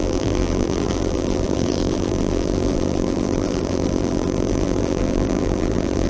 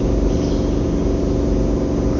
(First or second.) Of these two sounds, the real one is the second